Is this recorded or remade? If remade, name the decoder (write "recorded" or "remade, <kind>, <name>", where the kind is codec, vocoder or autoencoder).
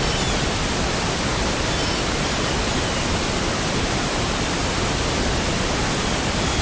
recorded